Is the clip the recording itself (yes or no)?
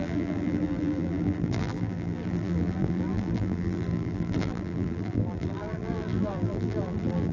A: no